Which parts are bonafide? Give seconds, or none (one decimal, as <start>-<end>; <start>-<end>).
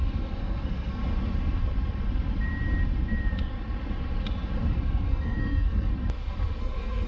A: 1.0-4.7; 5.9-6.6